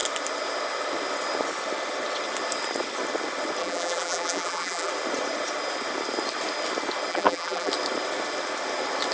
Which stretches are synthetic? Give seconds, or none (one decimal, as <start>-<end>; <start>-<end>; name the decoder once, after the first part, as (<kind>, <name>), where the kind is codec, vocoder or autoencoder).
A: 3.6-4.9 (vocoder, BigVGAN v2); 7.1-7.7